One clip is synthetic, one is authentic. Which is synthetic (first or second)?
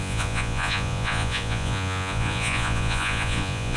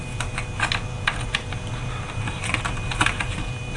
first